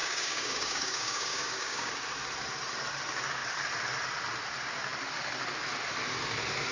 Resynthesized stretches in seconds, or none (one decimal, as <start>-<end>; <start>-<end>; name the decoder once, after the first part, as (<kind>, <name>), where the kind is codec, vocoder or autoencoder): 0.0-1.9 (codec, DAC)